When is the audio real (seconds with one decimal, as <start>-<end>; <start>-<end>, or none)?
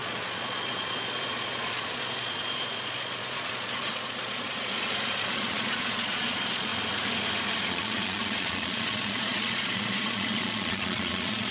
6.7-7.7